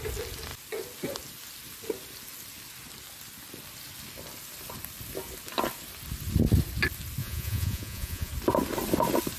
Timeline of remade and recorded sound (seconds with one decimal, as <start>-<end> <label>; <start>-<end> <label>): 0.0-7.2 recorded; 7.2-8.3 remade; 8.3-9.4 recorded

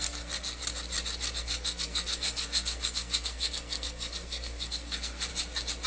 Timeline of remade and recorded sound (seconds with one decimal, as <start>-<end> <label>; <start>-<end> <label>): 0.0-0.6 remade; 0.6-1.4 recorded; 1.4-5.3 remade; 5.3-5.9 recorded

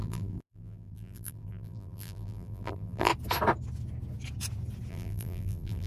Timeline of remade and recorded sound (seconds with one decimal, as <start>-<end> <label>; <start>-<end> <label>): 0.0-3.1 remade; 3.1-4.9 recorded; 4.9-5.9 remade